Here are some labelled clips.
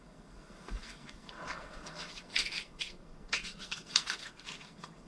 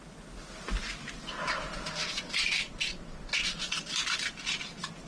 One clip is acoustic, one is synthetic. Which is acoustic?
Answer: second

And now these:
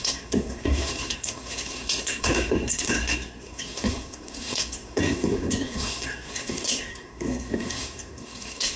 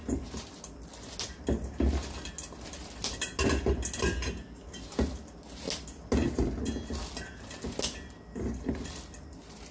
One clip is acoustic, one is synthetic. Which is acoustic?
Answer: second